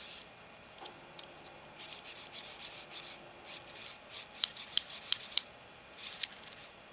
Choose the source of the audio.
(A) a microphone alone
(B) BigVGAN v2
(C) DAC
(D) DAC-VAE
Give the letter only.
A